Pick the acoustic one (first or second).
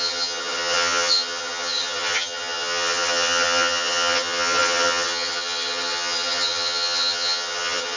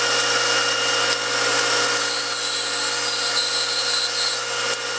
second